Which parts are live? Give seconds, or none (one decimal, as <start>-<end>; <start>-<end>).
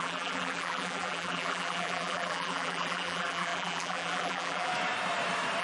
4.7-5.6